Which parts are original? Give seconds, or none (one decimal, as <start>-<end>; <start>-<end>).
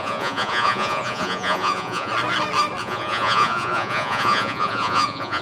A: 2.1-2.8